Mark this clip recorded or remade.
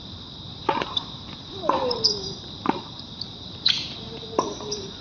remade